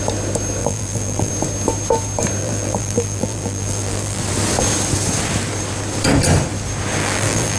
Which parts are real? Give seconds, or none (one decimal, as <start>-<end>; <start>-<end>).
0.0-0.6; 1.3-2.4; 4.2-7.0